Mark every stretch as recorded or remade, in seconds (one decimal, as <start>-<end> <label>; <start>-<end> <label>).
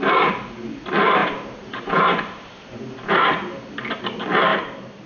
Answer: 0.0-1.2 recorded; 1.2-3.2 remade; 3.2-4.5 recorded; 4.5-5.1 remade